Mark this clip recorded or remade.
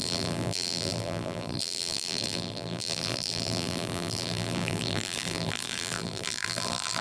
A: remade